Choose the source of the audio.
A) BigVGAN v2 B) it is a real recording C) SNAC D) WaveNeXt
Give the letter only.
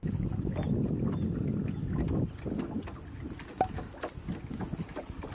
B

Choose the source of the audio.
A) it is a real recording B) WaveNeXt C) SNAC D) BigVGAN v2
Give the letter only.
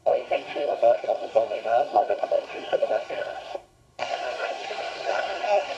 C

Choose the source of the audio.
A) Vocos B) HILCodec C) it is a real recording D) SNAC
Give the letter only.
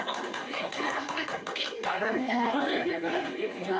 D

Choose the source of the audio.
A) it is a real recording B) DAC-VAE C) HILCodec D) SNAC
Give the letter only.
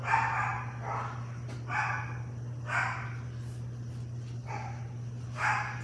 A